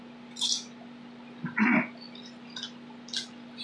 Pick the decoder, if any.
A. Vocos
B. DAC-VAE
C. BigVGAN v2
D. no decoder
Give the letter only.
D